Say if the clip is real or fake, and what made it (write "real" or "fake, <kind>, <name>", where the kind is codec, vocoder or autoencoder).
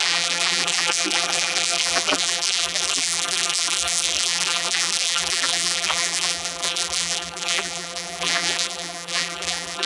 fake, vocoder, BigVGAN v2